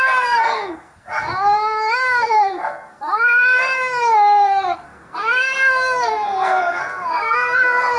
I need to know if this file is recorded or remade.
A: remade